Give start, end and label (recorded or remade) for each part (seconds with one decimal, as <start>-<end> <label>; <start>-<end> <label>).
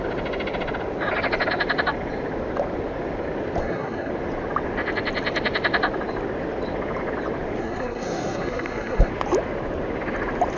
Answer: 0.0-3.6 recorded; 3.6-4.1 remade; 4.1-7.6 recorded; 7.6-9.1 remade; 9.1-10.6 recorded